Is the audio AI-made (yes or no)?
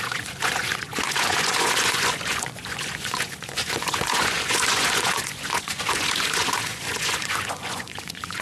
yes